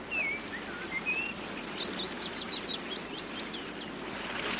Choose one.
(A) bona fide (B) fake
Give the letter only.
A